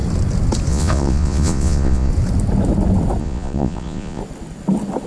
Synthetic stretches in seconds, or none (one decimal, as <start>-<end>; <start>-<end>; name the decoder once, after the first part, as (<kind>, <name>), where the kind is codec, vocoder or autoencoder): 0.7-2.1 (vocoder, Vocos); 3.2-4.2